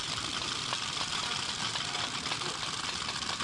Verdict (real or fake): real